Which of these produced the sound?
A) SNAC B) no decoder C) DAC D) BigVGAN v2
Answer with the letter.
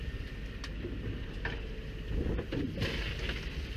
B